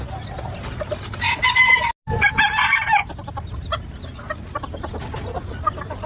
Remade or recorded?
recorded